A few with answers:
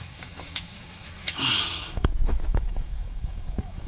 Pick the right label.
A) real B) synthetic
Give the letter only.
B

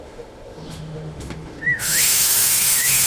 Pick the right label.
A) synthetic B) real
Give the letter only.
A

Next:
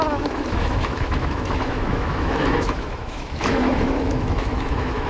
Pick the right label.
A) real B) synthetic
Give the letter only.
B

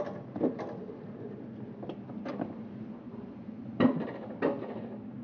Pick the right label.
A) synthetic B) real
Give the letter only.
B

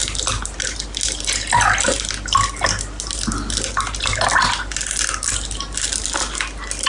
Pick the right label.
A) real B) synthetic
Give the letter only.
A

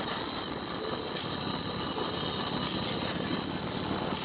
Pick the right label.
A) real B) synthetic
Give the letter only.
A